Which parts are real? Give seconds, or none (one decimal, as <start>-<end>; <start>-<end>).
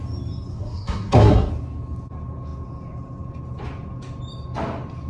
0.0-0.5; 1.5-5.1